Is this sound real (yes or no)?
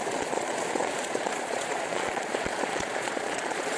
no